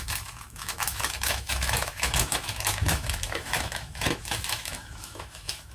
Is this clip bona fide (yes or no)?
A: no